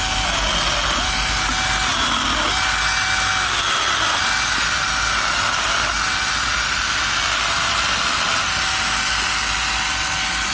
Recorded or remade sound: recorded